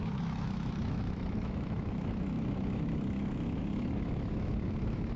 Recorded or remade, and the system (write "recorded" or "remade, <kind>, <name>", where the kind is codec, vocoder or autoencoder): remade, autoencoder, DAC-VAE